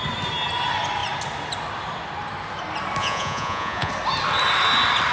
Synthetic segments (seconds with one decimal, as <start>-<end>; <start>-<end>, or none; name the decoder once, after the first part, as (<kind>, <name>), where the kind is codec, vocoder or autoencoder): 3.0-3.9 (vocoder, Vocos)